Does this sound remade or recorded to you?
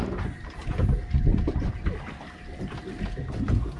recorded